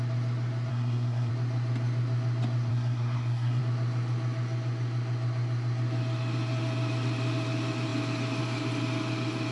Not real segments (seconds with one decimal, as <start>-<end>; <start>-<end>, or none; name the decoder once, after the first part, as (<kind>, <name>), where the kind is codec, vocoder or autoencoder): 0.7-1.3 (codec, SNAC); 2.7-3.6